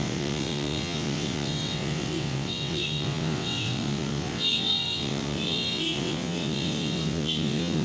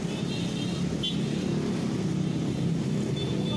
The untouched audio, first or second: second